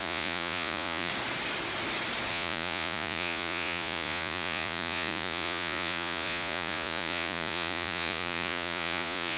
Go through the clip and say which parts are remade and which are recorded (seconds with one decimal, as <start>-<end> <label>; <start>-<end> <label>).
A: 0.0-1.1 remade; 1.1-2.3 recorded; 2.3-9.4 remade